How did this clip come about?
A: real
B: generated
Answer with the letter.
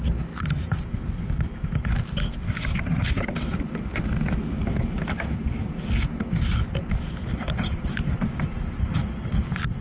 A